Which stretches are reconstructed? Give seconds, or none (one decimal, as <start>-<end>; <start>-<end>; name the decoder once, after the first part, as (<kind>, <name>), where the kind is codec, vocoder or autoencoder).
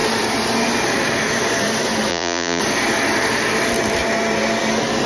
2.1-2.6 (vocoder, Vocos)